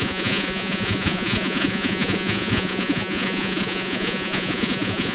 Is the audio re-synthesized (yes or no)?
yes